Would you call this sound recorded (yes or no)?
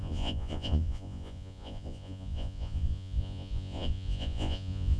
no